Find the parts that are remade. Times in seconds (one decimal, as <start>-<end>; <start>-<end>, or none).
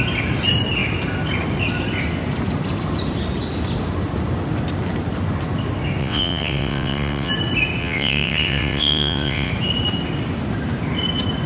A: 6.0-7.3; 7.8-9.5